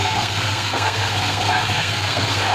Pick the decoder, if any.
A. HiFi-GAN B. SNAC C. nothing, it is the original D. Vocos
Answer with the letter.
B